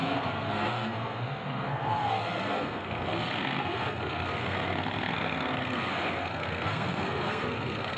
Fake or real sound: fake